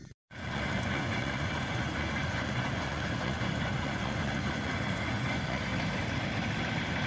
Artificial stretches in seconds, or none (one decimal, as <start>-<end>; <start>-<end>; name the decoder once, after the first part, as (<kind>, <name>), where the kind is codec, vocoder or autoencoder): 0.0-5.7 (vocoder, Vocos)